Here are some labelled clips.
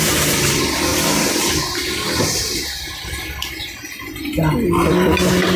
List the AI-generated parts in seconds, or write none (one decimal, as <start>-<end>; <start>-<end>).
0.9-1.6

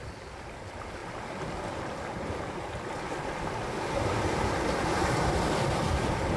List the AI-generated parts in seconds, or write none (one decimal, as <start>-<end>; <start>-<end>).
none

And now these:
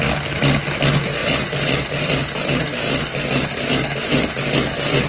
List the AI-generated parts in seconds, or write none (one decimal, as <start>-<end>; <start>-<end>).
1.2-2.4; 3.1-3.7

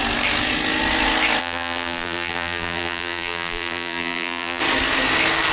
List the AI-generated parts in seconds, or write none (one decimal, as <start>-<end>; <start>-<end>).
1.4-4.6

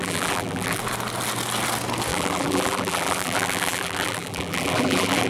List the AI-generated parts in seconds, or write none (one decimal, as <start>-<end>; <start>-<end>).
0.0-0.8; 2.1-5.3

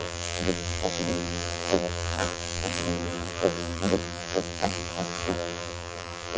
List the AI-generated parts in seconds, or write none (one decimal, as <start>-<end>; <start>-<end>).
0.0-6.4

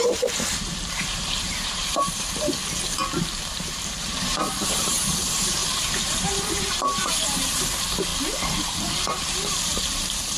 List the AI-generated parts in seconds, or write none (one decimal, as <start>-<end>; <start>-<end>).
0.0-2.6; 3.5-8.1; 8.6-10.4

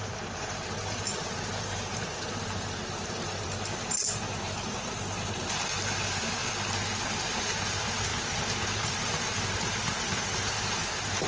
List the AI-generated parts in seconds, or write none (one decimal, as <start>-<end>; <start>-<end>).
0.0-6.4; 7.0-8.1; 8.8-11.3